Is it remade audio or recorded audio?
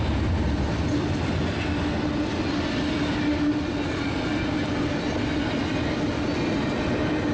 recorded